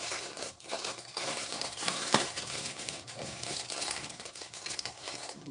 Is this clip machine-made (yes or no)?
yes